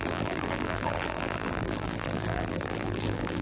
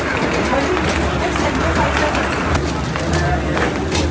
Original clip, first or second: second